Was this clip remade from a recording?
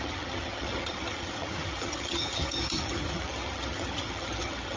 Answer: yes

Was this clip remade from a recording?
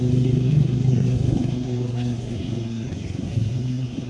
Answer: yes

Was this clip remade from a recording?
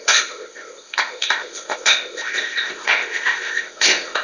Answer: yes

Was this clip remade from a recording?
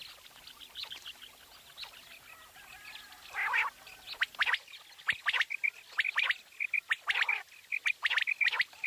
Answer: no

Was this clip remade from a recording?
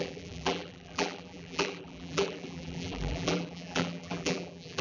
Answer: yes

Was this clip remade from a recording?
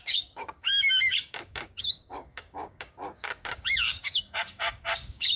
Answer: yes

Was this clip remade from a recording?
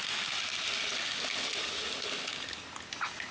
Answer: no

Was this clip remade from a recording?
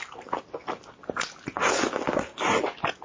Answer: no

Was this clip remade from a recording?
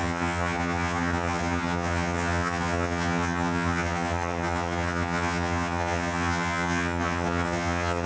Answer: yes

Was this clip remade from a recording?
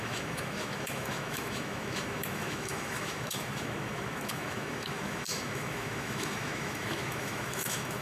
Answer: yes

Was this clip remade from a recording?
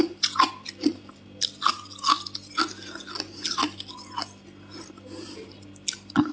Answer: no